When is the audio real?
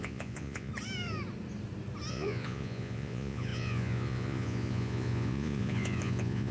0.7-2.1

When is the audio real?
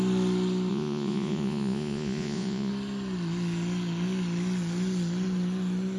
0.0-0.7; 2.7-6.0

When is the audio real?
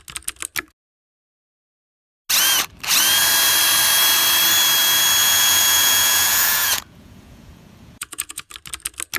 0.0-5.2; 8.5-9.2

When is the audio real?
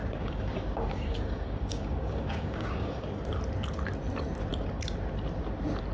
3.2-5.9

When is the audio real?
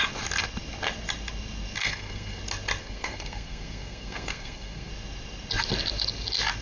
0.0-1.8; 2.4-2.8; 4.9-6.6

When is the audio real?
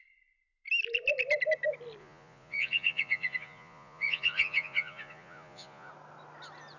0.0-2.0; 5.9-6.8